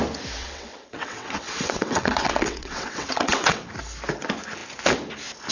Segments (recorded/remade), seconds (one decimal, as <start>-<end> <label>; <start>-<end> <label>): 0.0-0.4 recorded; 0.4-3.7 remade; 3.7-5.5 recorded